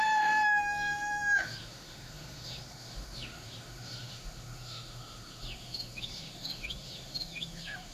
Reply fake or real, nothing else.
fake